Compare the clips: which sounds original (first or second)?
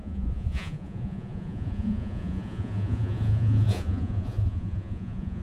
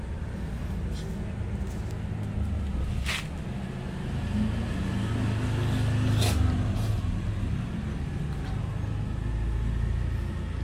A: second